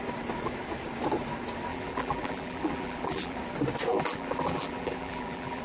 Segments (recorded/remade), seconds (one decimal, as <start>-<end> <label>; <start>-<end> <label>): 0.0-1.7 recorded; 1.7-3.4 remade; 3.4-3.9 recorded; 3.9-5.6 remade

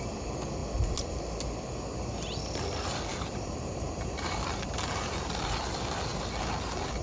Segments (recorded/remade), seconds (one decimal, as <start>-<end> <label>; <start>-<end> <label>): 0.0-3.1 recorded; 3.1-5.3 remade; 5.3-7.0 recorded

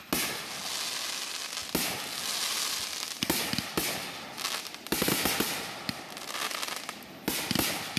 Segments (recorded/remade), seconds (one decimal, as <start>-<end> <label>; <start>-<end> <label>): 0.0-8.0 recorded

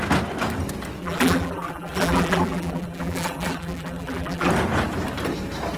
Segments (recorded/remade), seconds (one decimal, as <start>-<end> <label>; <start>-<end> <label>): 0.0-1.0 recorded; 1.0-4.5 remade; 4.5-5.8 recorded

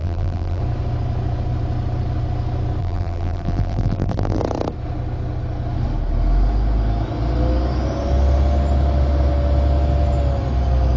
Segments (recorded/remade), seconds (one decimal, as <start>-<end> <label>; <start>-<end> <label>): 0.0-0.6 remade; 0.6-2.8 recorded; 2.8-4.4 remade; 4.4-11.0 recorded

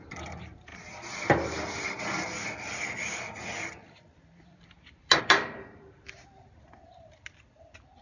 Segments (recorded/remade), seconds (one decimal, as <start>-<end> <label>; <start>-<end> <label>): 0.0-8.0 remade